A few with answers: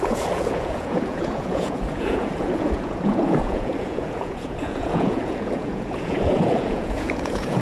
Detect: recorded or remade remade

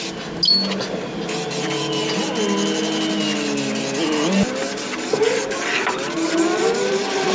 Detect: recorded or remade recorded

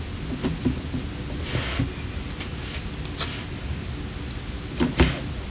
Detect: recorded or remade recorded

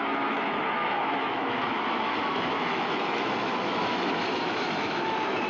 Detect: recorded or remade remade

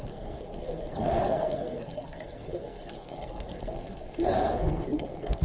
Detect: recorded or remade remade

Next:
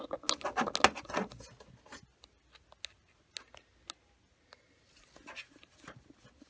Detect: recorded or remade recorded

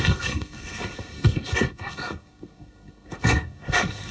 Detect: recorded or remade remade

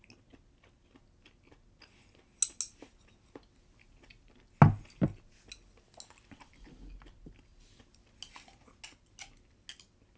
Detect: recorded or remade recorded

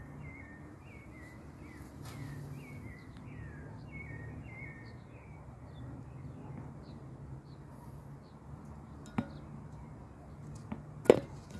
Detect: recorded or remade recorded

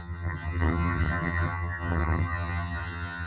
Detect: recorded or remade remade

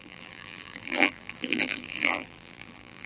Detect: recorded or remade remade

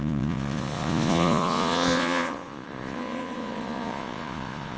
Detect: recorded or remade remade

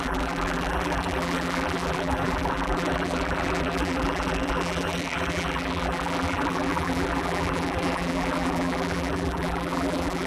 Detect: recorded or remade remade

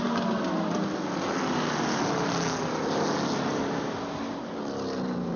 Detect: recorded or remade recorded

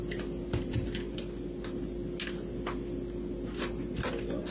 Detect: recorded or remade recorded